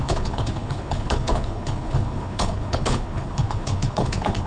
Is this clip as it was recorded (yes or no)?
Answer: no